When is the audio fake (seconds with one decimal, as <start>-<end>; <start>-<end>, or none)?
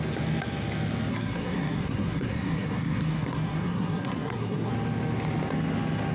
1.1-4.7